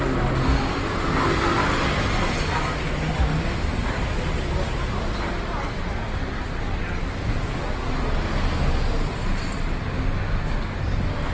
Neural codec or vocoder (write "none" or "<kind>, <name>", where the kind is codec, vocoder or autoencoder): none